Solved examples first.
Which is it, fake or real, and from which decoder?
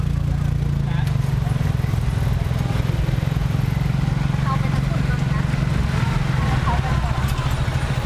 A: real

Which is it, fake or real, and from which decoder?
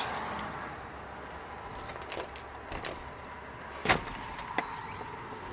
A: real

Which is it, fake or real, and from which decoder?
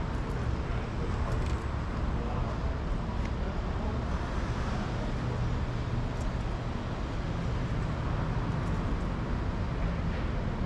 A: real